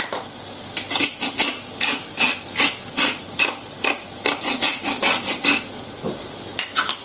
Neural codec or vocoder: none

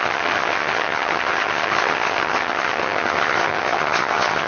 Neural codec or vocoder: vocoder, HiFi-GAN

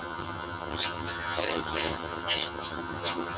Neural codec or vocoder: vocoder, HiFi-GAN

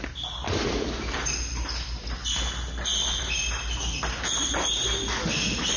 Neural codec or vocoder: none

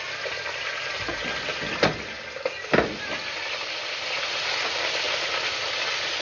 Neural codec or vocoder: none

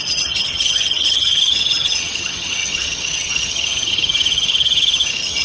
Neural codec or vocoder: vocoder, HiFi-GAN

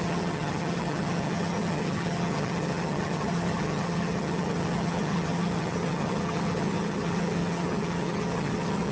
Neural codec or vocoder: vocoder, HiFi-GAN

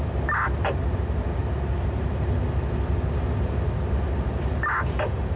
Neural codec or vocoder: none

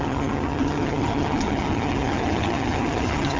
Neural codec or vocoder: vocoder, HiFi-GAN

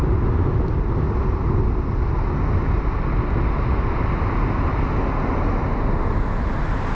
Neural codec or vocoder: none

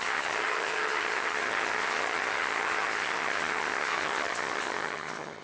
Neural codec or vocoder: vocoder, HiFi-GAN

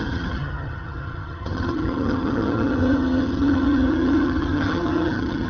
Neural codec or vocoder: vocoder, HiFi-GAN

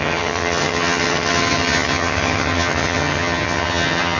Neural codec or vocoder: vocoder, HiFi-GAN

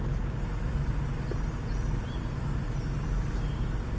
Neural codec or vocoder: none